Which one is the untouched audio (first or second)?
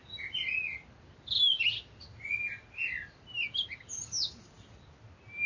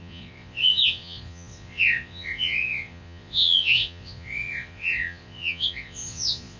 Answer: first